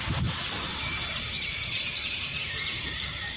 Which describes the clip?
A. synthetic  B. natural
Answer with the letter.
A